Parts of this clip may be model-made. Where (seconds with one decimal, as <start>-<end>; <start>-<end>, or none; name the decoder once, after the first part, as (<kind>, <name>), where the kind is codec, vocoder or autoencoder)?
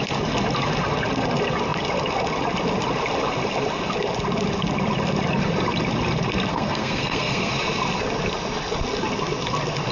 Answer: 6.5-7.5 (codec, SNAC)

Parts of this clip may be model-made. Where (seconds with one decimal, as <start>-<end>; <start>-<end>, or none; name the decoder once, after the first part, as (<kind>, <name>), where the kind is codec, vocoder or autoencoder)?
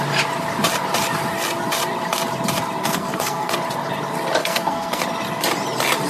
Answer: 2.8-3.5 (codec, SNAC); 4.4-5.0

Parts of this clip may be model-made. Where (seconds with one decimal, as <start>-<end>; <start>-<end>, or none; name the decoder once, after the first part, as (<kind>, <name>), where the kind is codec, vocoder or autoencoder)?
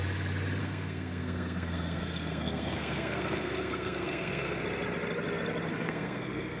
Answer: 0.6-4.6 (codec, SNAC); 5.7-6.6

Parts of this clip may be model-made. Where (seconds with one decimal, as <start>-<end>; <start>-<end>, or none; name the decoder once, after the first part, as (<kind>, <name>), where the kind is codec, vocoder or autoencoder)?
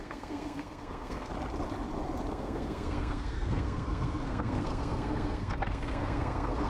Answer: 0.0-1.3 (codec, SNAC); 2.3-6.7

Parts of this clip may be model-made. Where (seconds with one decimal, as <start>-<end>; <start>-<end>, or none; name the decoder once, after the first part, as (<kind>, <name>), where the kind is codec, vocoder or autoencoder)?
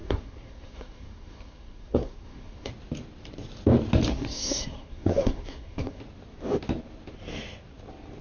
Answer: 0.0-2.7 (codec, SNAC); 4.1-6.0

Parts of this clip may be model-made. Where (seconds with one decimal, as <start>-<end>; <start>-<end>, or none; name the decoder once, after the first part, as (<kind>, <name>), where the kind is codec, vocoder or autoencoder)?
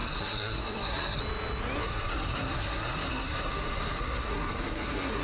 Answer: 0.0-1.2 (codec, SNAC); 1.8-5.2